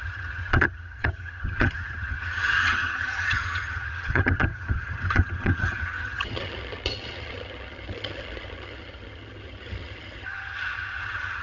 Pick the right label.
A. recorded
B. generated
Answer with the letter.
B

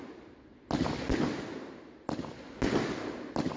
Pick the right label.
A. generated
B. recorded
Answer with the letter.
B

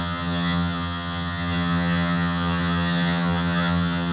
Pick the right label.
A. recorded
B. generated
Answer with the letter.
B